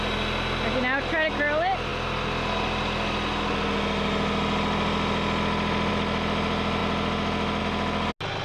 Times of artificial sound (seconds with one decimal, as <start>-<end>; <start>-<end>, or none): none